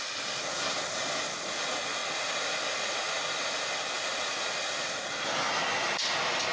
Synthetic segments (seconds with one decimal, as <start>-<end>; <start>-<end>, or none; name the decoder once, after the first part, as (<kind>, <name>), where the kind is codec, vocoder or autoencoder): none